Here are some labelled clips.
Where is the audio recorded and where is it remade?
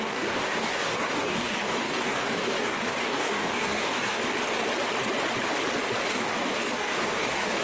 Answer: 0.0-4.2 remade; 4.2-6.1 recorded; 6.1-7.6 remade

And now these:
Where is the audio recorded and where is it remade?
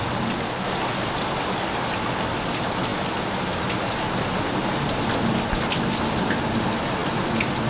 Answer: 0.0-7.7 recorded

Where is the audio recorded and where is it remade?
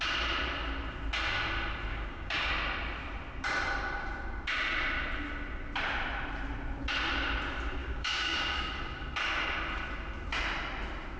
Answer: 0.0-1.9 recorded; 1.9-2.5 remade; 2.5-7.8 recorded; 7.8-8.7 remade; 8.7-11.2 recorded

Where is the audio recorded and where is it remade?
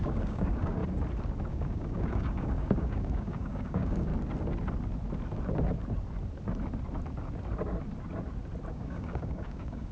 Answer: 0.0-0.8 remade; 0.8-1.5 recorded; 1.5-4.1 remade; 4.1-8.7 recorded; 8.7-9.9 remade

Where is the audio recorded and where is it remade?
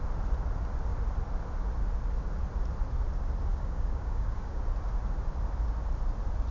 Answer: 0.0-3.5 recorded; 3.5-4.6 remade; 4.6-6.5 recorded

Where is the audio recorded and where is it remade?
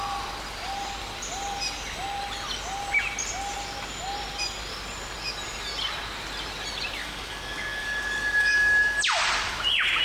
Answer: 0.0-7.0 recorded; 7.0-9.0 remade; 9.0-10.0 recorded